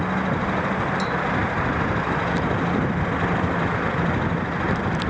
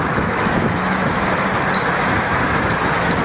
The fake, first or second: second